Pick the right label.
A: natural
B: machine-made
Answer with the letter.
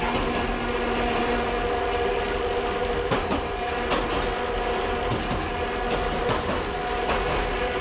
A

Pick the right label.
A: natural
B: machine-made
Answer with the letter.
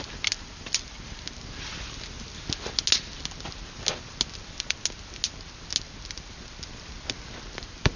A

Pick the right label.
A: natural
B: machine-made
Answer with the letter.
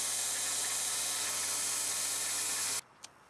A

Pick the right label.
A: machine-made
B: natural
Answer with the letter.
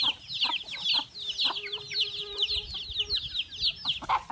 B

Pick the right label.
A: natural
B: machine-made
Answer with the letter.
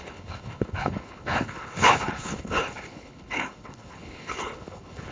B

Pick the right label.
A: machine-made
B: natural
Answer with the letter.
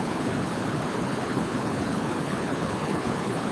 A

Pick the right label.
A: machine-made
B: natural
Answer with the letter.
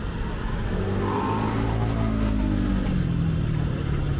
B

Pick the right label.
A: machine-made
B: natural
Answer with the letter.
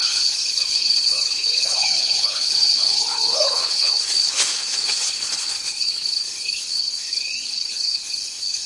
A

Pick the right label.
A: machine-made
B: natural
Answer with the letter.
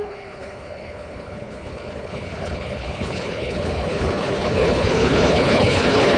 A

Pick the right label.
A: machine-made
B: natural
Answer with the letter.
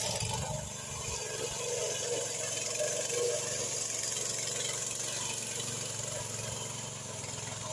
B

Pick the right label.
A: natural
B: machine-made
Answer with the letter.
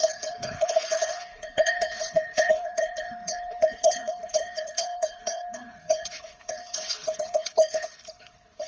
B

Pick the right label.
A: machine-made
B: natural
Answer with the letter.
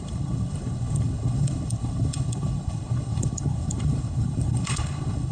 A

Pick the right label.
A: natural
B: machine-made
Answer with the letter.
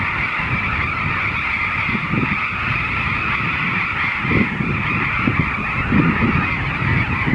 A